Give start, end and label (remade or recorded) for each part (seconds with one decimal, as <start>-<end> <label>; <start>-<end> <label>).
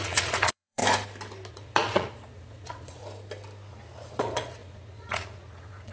0.0-0.8 remade; 0.8-1.5 recorded; 1.5-3.0 remade; 3.0-3.7 recorded; 3.7-5.9 remade